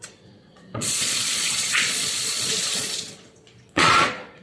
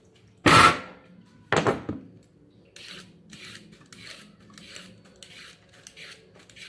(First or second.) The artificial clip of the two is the first